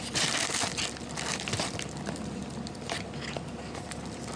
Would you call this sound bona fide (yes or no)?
yes